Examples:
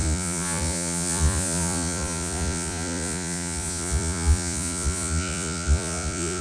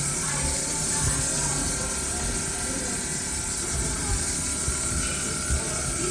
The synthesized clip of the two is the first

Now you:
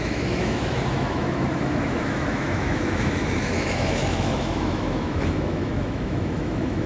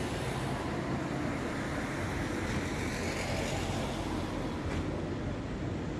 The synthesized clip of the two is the first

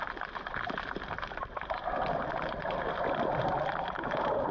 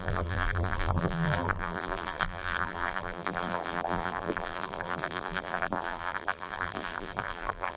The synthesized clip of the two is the second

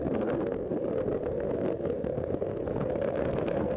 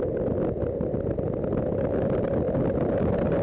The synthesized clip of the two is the first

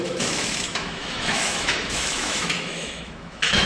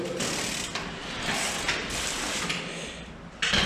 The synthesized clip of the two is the first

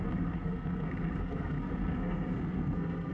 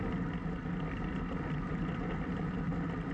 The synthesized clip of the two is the first